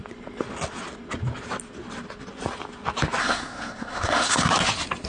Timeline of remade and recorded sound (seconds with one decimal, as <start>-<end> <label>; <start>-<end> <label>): 0.0-3.2 recorded; 3.2-4.5 remade; 4.5-5.1 recorded